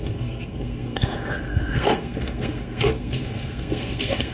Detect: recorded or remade remade